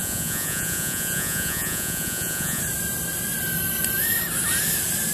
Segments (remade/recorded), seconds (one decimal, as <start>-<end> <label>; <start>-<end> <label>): 0.0-2.6 remade; 2.6-5.1 recorded